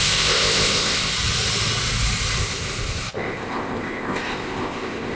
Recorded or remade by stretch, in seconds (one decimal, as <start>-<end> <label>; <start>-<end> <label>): 0.0-1.1 remade; 1.1-2.4 recorded; 2.4-5.2 remade